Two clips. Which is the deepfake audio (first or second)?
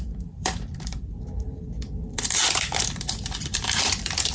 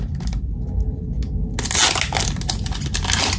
first